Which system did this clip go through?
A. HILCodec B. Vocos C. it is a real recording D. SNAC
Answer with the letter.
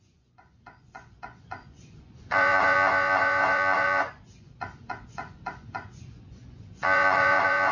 B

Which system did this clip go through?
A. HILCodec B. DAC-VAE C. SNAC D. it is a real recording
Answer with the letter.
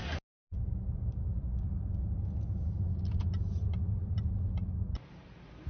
D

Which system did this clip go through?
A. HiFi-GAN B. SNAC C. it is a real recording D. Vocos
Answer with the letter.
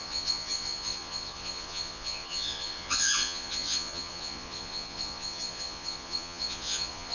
D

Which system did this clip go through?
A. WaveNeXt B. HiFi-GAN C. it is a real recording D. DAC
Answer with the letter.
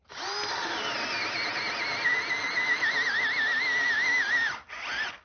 C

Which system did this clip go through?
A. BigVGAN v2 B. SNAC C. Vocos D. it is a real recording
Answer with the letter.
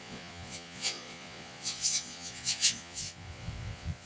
C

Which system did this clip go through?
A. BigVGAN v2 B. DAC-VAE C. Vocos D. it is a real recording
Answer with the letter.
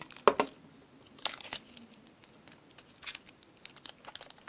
D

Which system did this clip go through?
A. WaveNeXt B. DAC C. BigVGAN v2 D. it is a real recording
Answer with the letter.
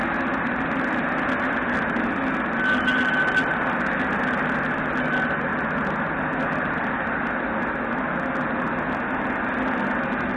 D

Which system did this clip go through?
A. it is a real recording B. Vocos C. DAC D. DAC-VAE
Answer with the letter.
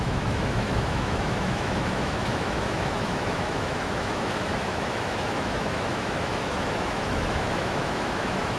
D